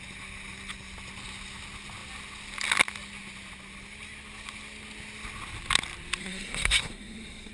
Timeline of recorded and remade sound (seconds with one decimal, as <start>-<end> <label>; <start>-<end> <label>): 0.0-6.2 recorded; 6.2-7.5 remade